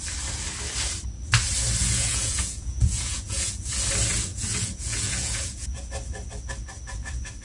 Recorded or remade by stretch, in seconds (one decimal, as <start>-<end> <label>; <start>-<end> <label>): 0.0-1.8 recorded; 1.8-3.7 remade; 3.7-4.3 recorded; 4.3-5.9 remade; 5.9-7.4 recorded